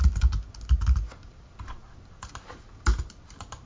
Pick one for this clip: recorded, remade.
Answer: recorded